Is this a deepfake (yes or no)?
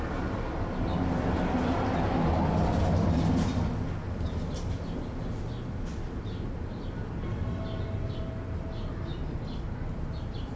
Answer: no